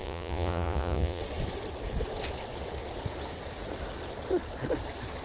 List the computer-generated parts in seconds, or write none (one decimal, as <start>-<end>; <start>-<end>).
0.0-1.2